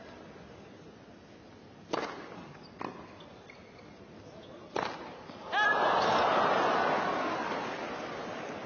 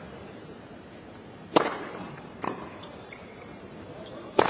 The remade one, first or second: second